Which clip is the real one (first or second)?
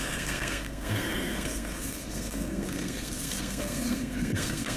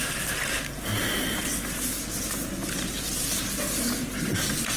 second